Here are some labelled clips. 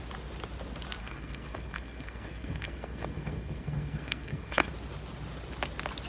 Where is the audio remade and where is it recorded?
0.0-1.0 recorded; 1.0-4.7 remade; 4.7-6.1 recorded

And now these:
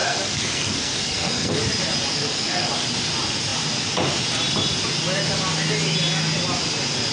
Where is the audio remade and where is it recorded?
0.0-1.6 remade; 1.6-2.1 recorded; 2.1-2.7 remade; 2.7-7.1 recorded